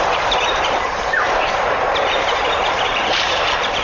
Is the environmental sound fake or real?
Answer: fake